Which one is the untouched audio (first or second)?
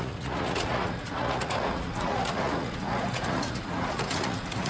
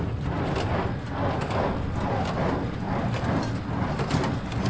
second